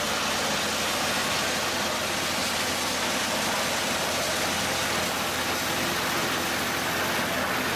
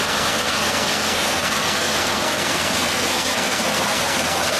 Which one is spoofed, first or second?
second